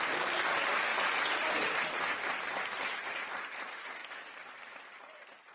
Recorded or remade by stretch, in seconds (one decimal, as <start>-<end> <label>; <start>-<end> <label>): 0.0-5.5 recorded